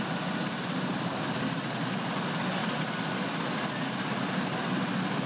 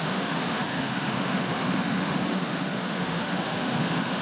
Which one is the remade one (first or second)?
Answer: second